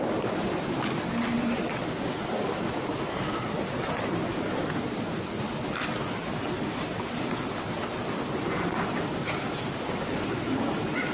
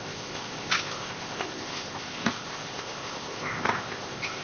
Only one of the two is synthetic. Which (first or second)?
second